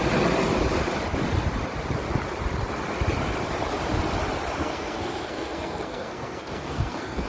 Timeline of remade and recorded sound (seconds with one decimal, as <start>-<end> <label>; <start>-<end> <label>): 0.0-4.6 recorded; 4.6-7.3 remade